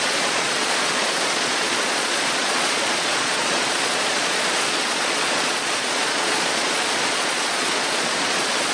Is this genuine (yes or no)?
no